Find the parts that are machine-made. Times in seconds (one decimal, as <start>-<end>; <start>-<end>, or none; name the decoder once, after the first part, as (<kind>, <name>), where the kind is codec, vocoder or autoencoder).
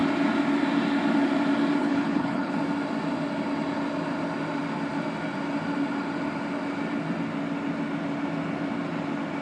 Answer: 1.8-2.6 (codec, HILCodec)